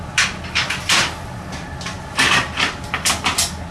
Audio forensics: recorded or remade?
recorded